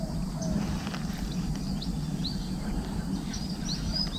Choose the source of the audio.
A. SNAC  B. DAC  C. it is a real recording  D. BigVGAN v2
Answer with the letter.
C